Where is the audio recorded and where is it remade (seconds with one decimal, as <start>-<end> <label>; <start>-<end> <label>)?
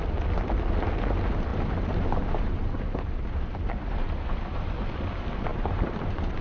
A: 0.0-1.5 recorded; 1.5-4.4 remade; 4.4-5.5 recorded; 5.5-6.4 remade